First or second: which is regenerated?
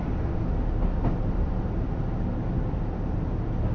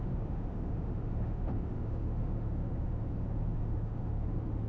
second